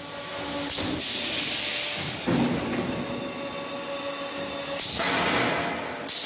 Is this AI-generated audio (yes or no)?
no